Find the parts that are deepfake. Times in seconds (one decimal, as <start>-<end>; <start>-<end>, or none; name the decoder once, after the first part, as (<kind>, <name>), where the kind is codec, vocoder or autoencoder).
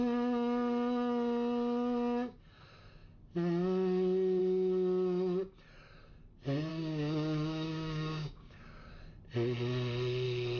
6.7-8.9 (codec, DAC)